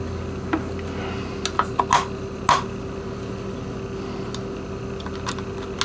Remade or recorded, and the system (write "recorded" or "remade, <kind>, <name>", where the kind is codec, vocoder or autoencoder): recorded